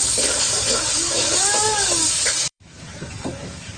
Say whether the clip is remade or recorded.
remade